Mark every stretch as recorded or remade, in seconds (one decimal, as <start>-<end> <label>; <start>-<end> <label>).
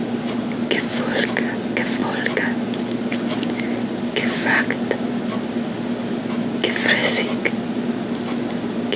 0.0-9.0 recorded